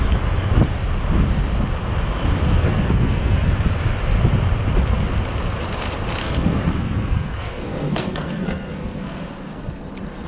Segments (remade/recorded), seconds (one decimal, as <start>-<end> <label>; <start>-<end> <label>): 0.0-2.5 recorded; 2.5-3.5 remade; 3.5-6.2 recorded; 6.2-9.8 remade; 9.8-10.3 recorded